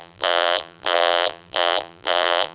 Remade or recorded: remade